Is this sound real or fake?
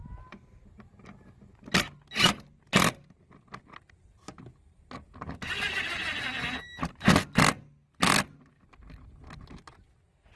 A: real